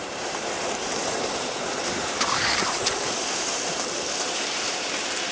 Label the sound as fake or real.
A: fake